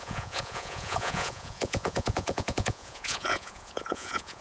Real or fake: fake